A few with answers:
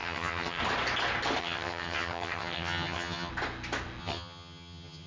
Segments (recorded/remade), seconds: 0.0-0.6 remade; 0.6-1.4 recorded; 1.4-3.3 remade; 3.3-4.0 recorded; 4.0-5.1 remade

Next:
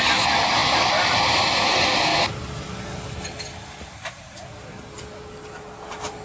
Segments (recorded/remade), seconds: 0.0-6.2 recorded

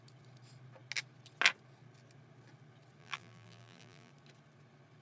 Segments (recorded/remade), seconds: 0.0-3.0 recorded; 3.0-4.1 remade; 4.1-5.0 recorded

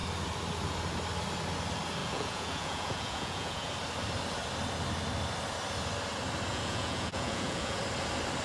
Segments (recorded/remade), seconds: 0.0-2.0 recorded; 2.0-3.7 remade; 3.7-6.5 recorded; 6.5-7.8 remade; 7.8-8.4 recorded

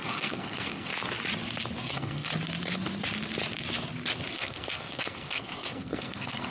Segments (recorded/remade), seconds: 0.0-0.9 remade; 0.9-1.9 recorded; 1.9-2.3 remade; 2.3-4.3 recorded; 4.3-6.5 remade